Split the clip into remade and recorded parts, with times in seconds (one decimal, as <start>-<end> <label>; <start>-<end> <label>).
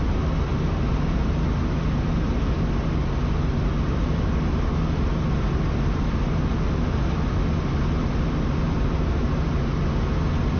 0.0-0.5 recorded; 0.5-1.2 remade; 1.2-10.6 recorded